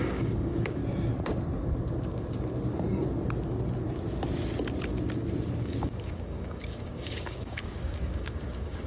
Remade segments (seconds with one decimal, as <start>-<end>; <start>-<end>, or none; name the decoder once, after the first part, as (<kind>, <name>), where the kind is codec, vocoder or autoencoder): 0.0-0.8 (codec, DAC); 5.6-8.9